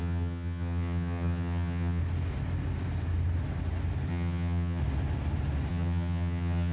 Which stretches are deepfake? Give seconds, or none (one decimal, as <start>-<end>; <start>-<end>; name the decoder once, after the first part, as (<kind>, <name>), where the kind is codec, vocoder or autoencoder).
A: 0.0-2.0 (vocoder, HiFi-GAN); 4.1-4.8; 5.7-6.7